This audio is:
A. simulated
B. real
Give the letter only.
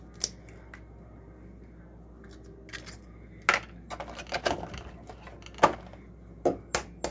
B